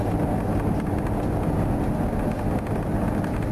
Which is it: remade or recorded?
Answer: recorded